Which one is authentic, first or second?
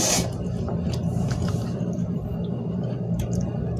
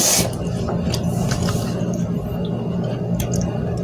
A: second